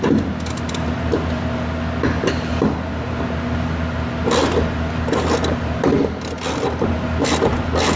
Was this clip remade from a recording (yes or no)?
no